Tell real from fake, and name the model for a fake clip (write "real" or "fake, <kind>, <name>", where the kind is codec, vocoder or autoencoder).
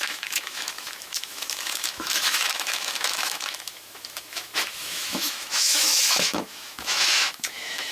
fake, autoencoder, DAC-VAE